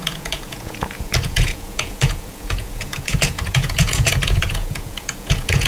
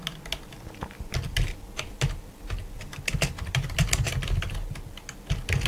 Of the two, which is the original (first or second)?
second